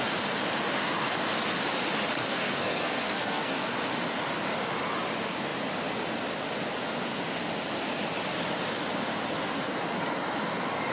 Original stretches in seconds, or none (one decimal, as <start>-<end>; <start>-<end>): 0.0-2.2; 3.7-10.9